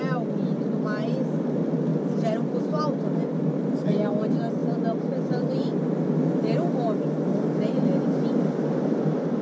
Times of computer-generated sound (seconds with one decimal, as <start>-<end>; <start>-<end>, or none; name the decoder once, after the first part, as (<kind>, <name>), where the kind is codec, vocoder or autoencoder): none